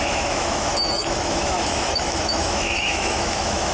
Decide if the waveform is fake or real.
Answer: fake